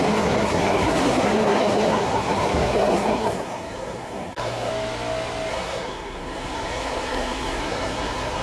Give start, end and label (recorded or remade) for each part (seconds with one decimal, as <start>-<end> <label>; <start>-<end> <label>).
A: 0.0-4.7 remade; 4.7-5.5 recorded; 5.5-8.4 remade